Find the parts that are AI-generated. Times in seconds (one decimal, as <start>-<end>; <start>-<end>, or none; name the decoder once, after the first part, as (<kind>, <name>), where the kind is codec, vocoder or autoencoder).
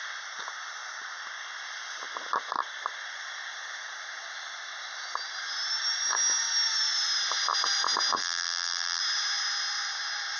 8.2-9.0 (vocoder, BigVGAN v2)